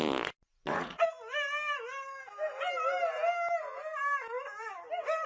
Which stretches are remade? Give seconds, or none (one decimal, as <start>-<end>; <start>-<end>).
0.5-1.0